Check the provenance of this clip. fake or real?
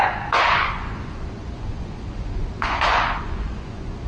fake